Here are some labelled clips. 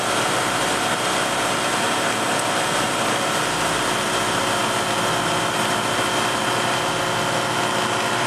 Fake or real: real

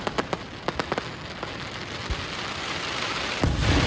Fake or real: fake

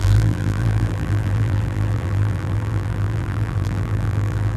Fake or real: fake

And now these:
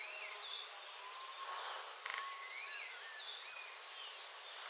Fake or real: real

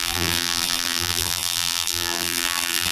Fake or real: fake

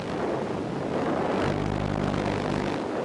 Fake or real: real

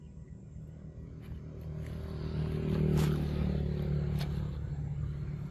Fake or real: real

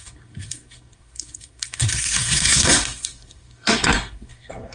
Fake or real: fake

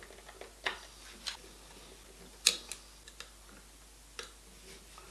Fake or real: real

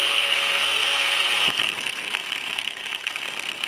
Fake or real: fake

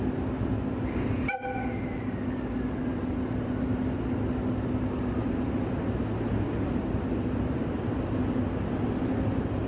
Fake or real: real